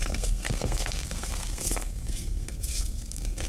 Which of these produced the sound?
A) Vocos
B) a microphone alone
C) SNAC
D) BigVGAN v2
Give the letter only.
C